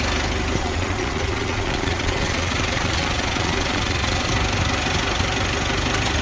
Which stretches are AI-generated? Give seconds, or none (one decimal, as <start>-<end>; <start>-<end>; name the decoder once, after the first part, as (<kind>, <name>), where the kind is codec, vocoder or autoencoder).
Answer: 0.6-4.3 (vocoder, Vocos)